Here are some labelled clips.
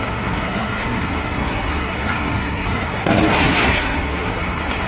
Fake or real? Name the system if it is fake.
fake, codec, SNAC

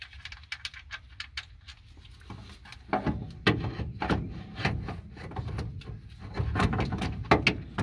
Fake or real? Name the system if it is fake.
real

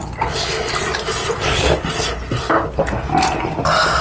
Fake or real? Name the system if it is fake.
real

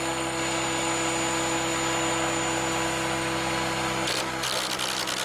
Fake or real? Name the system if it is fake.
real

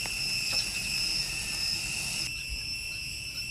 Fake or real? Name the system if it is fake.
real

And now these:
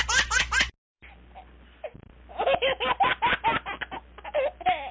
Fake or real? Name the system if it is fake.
real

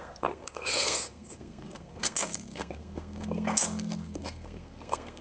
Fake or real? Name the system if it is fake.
fake, codec, SNAC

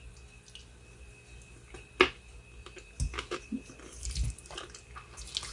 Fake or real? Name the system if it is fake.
real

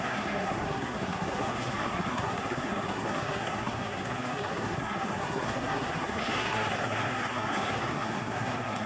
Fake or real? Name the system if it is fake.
fake, codec, SNAC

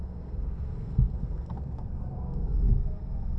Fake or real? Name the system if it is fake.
fake, codec, SNAC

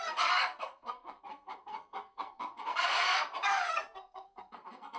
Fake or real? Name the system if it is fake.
fake, codec, SNAC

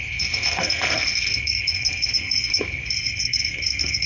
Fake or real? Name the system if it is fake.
fake, codec, SNAC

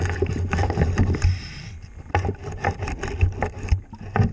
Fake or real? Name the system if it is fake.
real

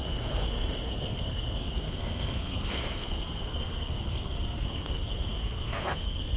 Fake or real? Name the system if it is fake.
fake, codec, SNAC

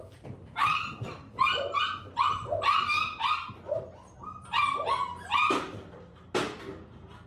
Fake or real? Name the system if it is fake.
real